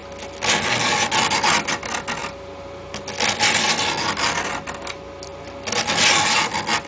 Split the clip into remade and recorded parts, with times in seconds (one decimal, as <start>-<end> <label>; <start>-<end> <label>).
0.0-6.9 recorded

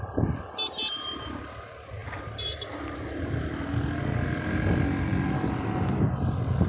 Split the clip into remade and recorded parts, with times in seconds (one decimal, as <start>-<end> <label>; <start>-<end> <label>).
0.0-6.7 recorded

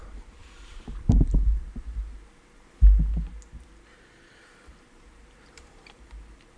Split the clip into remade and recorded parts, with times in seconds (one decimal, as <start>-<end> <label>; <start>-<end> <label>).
0.0-3.1 remade; 3.1-4.7 recorded; 4.7-6.6 remade

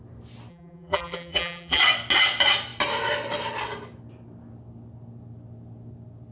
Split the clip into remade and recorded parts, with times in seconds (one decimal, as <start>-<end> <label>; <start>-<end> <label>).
0.0-0.5 recorded; 0.5-1.8 remade; 1.8-6.3 recorded

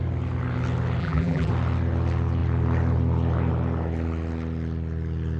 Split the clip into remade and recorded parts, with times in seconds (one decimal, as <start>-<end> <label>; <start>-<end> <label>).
0.0-1.0 recorded; 1.0-1.5 remade; 1.5-5.4 recorded